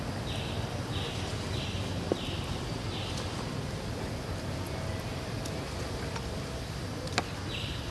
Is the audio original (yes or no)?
yes